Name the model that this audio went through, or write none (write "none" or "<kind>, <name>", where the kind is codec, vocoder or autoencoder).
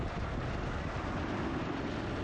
none